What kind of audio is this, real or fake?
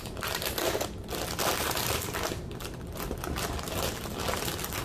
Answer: real